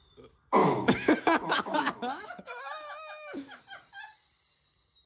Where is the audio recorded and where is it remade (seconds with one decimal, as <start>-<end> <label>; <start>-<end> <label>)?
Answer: 0.0-0.6 recorded; 0.6-3.6 remade; 3.6-5.1 recorded